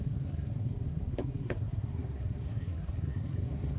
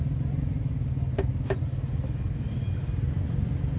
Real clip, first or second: second